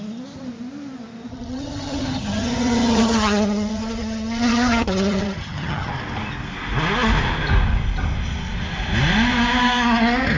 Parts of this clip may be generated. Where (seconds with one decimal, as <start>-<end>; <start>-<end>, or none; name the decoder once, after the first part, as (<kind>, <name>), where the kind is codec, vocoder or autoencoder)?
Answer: 1.3-5.9 (vocoder, HiFi-GAN)